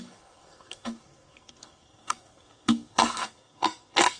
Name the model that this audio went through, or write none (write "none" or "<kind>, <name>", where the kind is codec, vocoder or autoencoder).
codec, SNAC